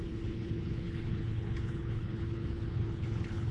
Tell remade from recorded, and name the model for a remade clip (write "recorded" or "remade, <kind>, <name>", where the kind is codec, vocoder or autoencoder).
remade, codec, HILCodec